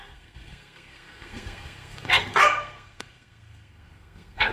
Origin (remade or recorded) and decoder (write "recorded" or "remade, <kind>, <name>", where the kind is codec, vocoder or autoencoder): remade, codec, SNAC